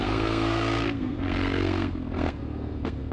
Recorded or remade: remade